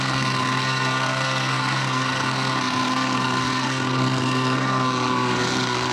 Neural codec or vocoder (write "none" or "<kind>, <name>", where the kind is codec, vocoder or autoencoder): codec, SNAC